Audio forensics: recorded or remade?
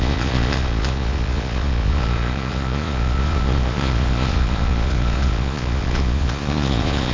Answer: remade